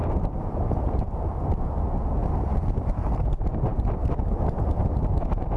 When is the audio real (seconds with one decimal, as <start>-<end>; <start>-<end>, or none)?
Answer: 1.6-2.2; 3.2-5.6